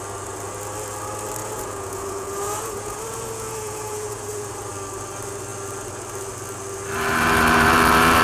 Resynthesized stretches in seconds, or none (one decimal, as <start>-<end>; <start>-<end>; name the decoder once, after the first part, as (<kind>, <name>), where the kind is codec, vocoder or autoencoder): 1.4-4.7 (vocoder, Vocos)